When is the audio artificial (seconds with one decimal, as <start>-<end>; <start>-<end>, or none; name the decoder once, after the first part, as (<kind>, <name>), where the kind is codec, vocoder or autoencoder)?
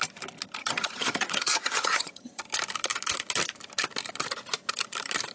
0.6-2.4 (vocoder, HiFi-GAN)